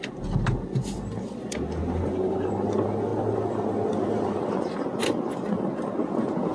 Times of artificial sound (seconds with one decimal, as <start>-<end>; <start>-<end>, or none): 1.8-2.5

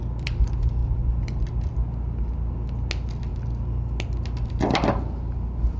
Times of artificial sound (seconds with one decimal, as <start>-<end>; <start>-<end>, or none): 0.8-1.4

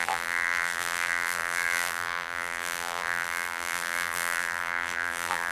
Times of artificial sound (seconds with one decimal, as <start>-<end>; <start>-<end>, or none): 0.0-5.5

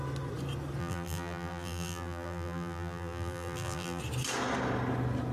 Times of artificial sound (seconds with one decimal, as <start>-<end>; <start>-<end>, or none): 0.8-4.0

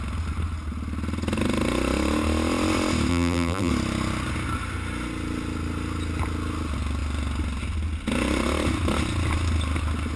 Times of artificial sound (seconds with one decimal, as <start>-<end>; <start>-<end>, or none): 3.1-3.7

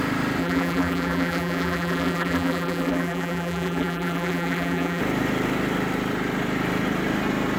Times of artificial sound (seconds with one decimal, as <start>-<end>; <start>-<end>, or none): 0.4-5.0

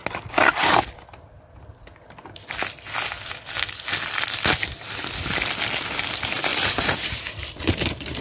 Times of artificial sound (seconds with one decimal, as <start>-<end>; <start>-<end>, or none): 6.5-7.3